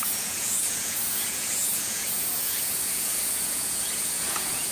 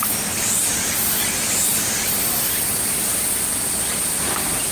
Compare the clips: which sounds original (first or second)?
second